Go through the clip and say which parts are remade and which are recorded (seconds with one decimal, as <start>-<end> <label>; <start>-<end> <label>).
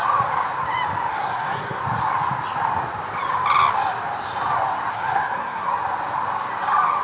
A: 0.0-1.1 recorded; 1.1-1.8 remade; 1.8-4.9 recorded; 4.9-5.7 remade; 5.7-7.0 recorded